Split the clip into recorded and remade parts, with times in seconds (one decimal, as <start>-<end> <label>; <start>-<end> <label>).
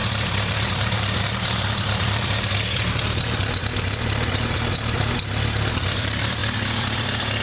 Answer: 0.0-3.6 remade; 3.6-5.7 recorded; 5.7-6.4 remade; 6.4-7.4 recorded